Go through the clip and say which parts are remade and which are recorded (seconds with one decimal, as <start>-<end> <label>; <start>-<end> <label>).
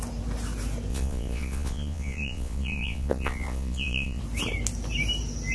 0.0-0.9 recorded; 0.9-4.2 remade; 4.2-5.5 recorded